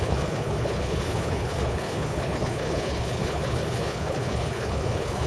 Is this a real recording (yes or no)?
no